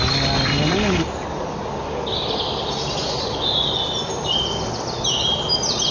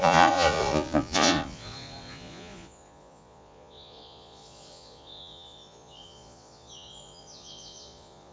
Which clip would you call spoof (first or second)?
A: second